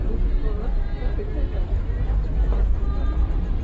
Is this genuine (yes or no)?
yes